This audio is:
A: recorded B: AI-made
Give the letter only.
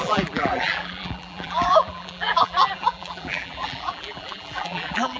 B